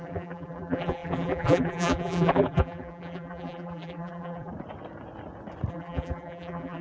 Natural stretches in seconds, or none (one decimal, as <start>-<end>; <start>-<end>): 4.5-5.7